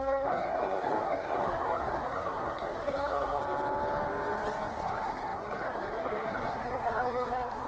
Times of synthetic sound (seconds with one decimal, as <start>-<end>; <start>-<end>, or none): 0.0-3.4; 4.7-7.7